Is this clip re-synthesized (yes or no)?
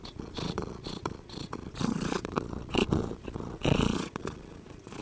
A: yes